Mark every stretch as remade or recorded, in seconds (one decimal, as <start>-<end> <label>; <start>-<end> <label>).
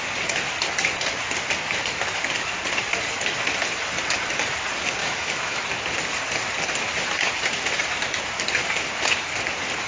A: 0.0-5.0 recorded; 5.0-5.6 remade; 5.6-9.9 recorded